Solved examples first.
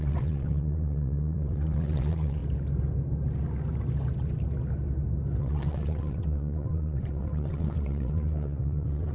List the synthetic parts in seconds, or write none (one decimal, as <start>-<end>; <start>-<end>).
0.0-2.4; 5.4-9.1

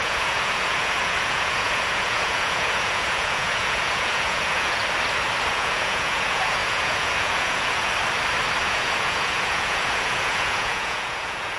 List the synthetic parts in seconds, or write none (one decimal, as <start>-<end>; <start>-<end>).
0.0-4.8; 5.5-7.9; 8.6-11.6

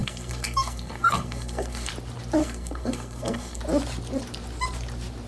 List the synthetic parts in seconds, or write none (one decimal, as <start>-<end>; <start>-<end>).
0.0-1.9; 2.4-3.6

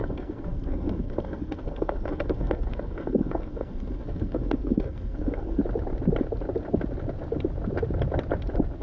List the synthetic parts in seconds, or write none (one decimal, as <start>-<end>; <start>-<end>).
0.0-5.6

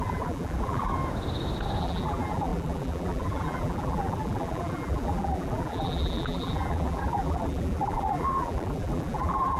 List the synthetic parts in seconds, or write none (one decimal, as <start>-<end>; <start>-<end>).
0.0-0.9; 1.8-9.6